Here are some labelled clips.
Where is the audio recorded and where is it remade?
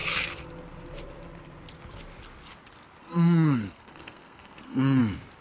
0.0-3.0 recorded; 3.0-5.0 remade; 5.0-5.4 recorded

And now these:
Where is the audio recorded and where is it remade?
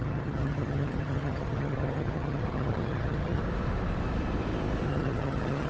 0.0-3.4 remade; 3.4-4.9 recorded; 4.9-5.7 remade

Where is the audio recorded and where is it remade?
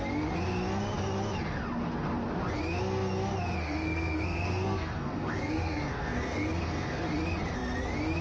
0.0-3.6 recorded; 3.6-7.0 remade; 7.0-8.2 recorded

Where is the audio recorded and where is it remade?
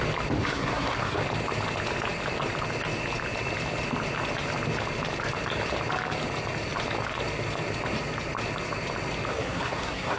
0.0-0.4 recorded; 0.4-1.2 remade; 1.2-9.3 recorded; 9.3-10.2 remade